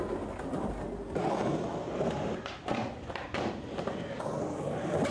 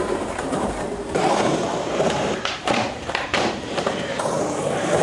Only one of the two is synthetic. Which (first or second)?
second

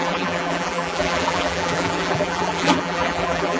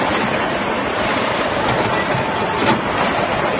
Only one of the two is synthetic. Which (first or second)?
first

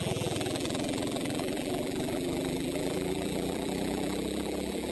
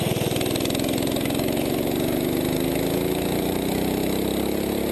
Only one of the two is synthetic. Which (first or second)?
first